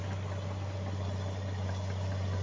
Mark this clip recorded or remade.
recorded